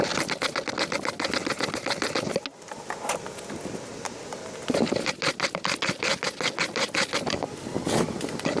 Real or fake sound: real